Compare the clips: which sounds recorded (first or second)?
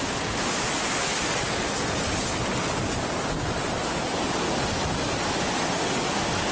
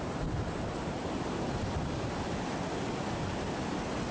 first